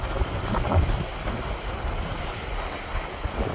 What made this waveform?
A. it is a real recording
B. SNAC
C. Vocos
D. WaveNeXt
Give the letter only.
A